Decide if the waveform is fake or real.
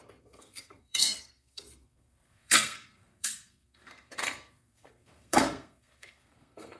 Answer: fake